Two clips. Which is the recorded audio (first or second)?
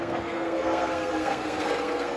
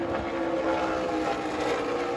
second